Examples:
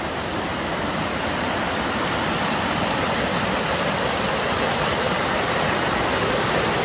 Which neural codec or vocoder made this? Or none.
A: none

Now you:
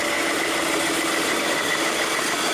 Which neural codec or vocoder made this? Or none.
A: none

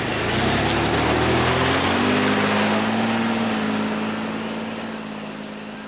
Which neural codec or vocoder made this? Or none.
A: none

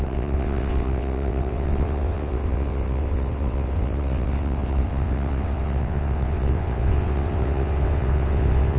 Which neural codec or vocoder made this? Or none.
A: vocoder, WaveNeXt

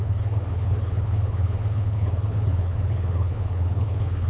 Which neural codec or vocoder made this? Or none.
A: codec, HILCodec